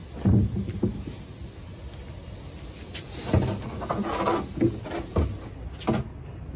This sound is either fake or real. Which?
real